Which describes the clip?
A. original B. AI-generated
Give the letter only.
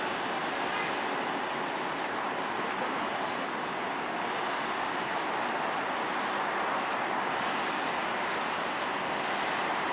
A